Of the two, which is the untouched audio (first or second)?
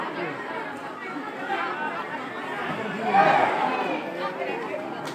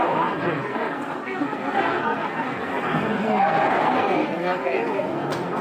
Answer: first